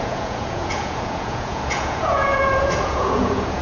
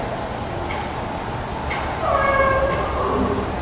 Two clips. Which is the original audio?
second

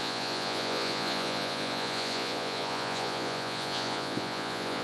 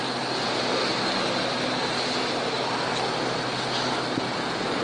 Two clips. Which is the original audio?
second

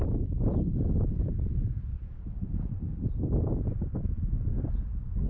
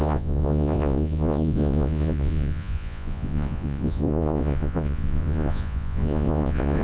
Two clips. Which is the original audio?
first